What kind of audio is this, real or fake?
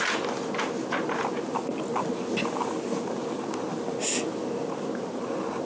real